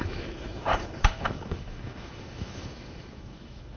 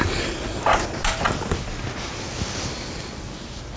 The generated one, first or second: first